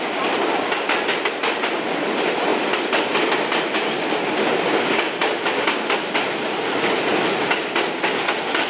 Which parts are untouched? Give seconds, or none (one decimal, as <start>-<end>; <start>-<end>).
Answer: 0.0-2.5; 3.2-8.7